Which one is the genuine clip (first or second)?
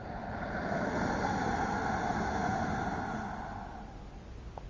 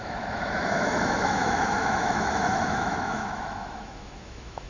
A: first